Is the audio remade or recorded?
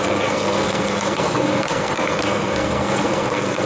remade